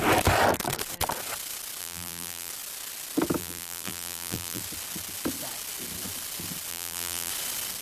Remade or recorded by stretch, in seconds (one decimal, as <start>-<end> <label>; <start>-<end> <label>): 0.0-1.8 recorded; 1.8-2.5 remade; 2.5-3.4 recorded; 3.4-4.6 remade; 4.6-6.7 recorded; 6.7-7.3 remade; 7.3-7.8 recorded